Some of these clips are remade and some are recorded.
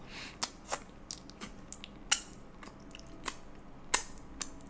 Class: recorded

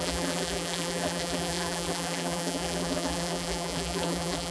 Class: remade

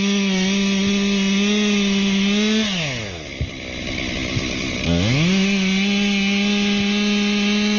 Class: recorded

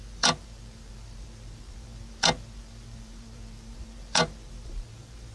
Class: remade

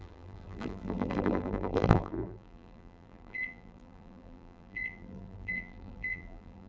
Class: remade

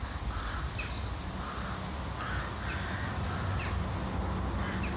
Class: recorded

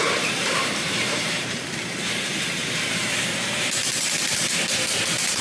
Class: remade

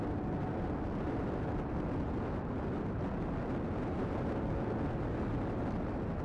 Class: recorded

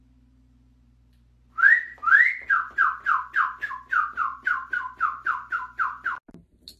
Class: recorded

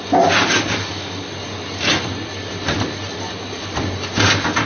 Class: recorded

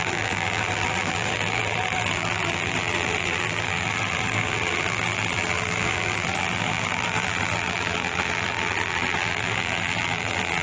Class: remade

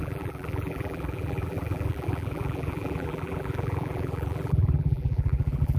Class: remade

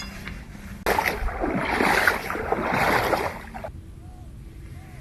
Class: recorded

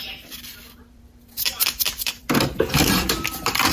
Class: remade